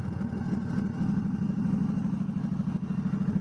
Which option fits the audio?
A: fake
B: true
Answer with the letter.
B